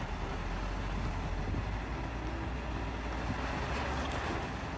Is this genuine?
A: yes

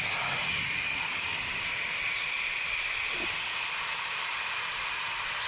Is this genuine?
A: yes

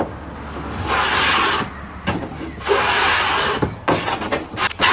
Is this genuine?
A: yes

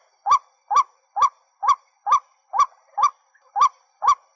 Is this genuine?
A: yes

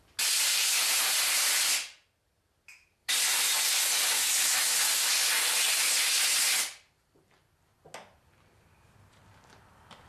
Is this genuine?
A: yes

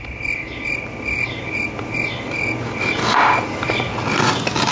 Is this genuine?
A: yes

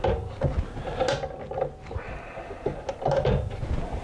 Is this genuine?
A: yes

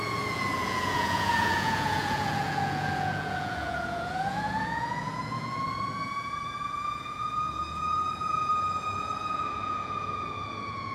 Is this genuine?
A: no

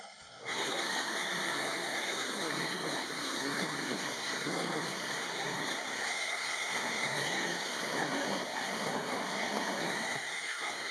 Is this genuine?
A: no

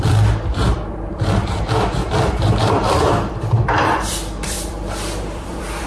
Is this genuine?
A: no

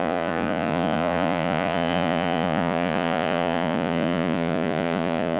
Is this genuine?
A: no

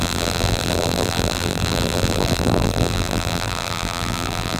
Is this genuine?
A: no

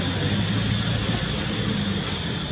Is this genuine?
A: yes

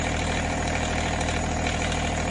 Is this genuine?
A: no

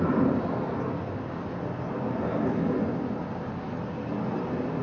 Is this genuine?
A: yes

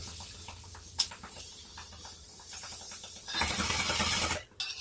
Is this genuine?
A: yes